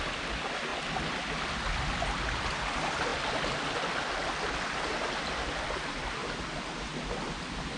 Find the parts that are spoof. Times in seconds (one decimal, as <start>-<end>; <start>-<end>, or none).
none